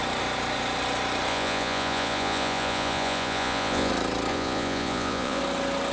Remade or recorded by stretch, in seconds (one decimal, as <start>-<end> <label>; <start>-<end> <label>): 0.0-1.3 recorded; 1.3-3.9 remade; 3.9-4.3 recorded; 4.3-5.4 remade; 5.4-5.9 recorded